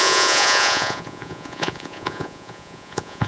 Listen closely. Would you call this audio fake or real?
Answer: fake